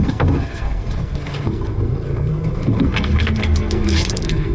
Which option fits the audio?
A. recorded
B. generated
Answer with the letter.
B